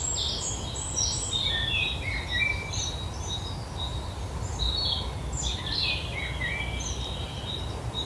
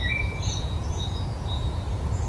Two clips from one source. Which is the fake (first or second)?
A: second